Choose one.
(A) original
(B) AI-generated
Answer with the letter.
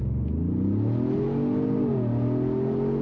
A